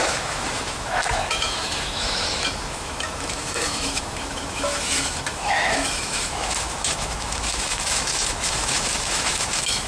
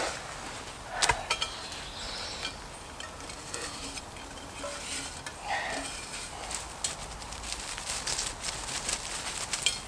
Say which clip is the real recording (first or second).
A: second